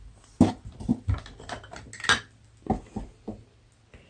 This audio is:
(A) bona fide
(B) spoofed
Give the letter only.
A